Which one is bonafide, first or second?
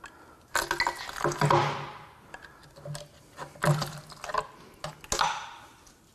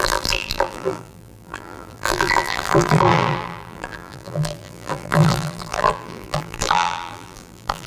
first